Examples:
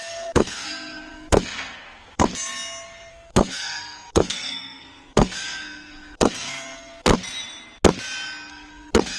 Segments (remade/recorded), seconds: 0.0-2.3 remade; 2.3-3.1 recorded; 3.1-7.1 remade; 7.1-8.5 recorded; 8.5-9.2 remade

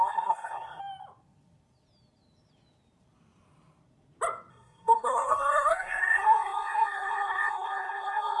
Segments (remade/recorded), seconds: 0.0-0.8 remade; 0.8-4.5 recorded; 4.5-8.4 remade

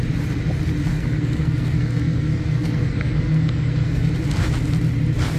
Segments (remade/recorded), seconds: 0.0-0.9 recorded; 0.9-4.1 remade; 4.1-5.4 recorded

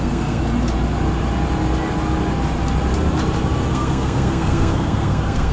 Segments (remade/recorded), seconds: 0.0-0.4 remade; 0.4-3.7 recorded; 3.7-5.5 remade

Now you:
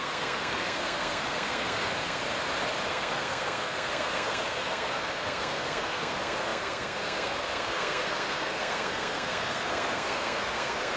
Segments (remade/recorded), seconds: 0.0-2.2 remade; 2.2-2.9 recorded; 2.9-11.0 remade